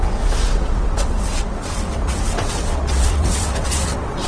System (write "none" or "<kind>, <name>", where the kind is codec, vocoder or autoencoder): vocoder, WaveNeXt